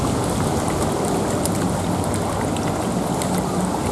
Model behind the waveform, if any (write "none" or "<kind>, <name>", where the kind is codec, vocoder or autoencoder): none